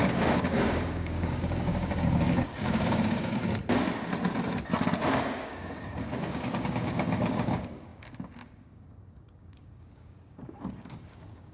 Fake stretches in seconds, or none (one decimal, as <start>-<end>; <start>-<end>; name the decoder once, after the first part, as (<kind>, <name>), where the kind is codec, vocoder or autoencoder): 0.0-3.4 (codec, DAC); 5.1-11.5